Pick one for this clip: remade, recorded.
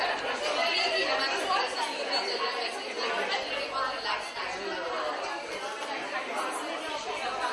recorded